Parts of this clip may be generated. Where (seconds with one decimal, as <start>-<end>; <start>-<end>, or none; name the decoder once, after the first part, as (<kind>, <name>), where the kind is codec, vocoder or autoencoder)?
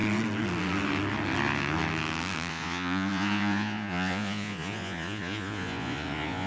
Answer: 2.5-6.5 (vocoder, Vocos)